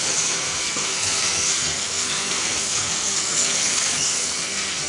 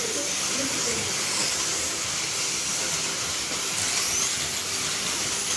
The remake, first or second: first